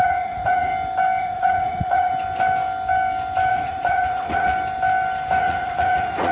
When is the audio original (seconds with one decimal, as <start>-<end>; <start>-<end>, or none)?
0.7-1.2; 2.1-3.5; 4.5-5.4